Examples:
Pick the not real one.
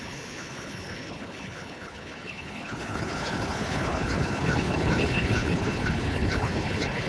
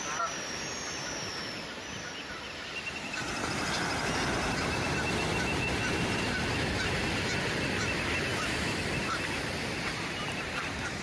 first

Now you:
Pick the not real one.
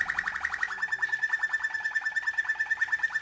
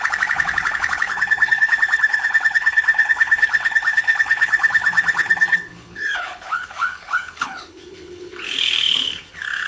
second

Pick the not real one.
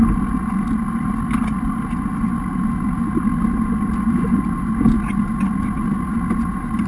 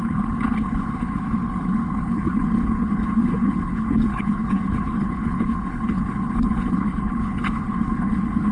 second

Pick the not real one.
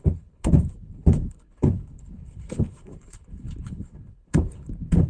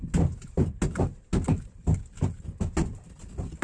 first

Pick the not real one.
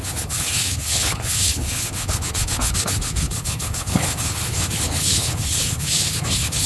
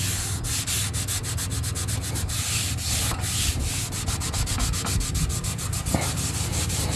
first